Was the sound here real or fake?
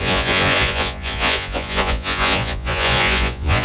fake